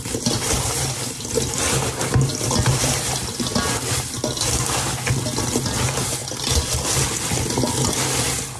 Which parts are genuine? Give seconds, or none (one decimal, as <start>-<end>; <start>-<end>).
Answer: 0.0-8.6